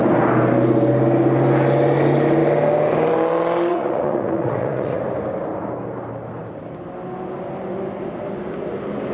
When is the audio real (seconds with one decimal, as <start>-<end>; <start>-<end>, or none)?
0.0-3.7; 5.0-9.1